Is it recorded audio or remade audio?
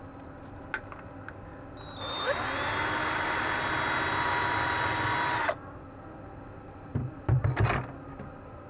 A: recorded